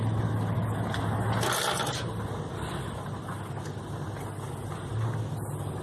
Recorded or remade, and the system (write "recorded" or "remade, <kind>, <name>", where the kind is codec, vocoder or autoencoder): recorded